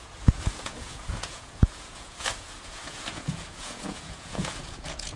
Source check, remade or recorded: remade